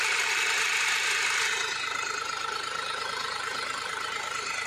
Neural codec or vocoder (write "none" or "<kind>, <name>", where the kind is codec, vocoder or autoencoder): vocoder, BigVGAN v2